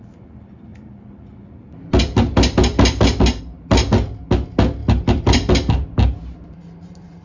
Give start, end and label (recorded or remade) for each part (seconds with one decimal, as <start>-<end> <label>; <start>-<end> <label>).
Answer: 0.0-4.8 recorded; 4.8-5.5 remade; 5.5-7.2 recorded